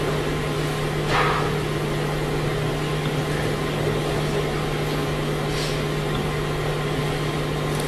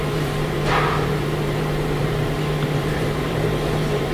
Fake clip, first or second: second